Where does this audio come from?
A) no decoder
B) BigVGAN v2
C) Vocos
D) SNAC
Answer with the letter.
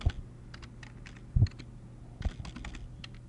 A